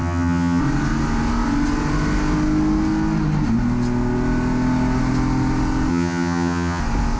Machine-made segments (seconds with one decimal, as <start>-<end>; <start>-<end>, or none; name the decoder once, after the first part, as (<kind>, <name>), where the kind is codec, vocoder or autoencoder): 0.0-0.6 (vocoder, HiFi-GAN); 5.9-6.8